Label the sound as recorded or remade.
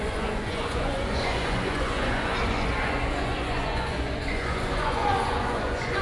remade